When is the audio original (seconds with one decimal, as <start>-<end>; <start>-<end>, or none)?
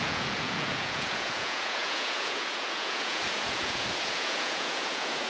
none